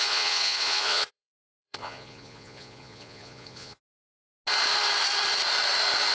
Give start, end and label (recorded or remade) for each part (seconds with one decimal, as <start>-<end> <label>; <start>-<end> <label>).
0.0-3.8 remade; 3.8-6.1 recorded